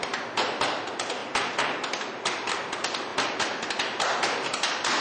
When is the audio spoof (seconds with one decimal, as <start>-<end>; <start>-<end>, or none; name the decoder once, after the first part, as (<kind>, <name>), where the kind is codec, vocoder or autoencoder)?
none